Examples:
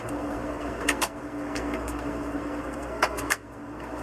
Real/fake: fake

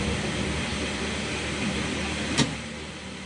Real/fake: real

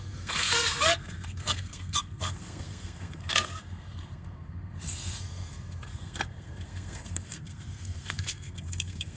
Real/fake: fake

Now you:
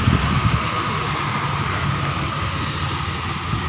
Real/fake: real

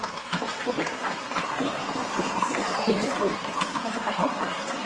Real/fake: fake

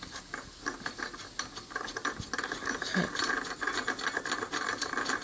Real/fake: real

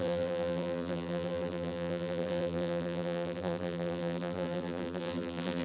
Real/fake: fake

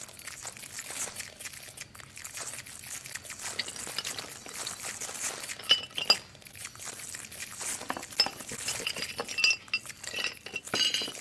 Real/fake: real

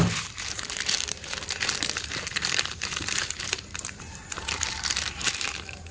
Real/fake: fake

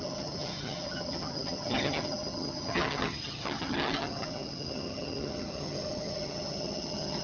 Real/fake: fake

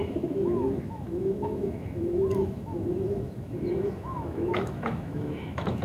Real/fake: fake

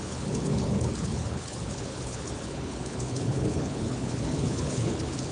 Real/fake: fake